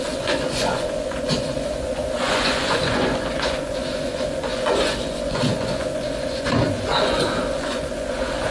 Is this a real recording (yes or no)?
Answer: no